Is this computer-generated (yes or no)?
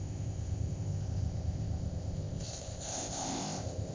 yes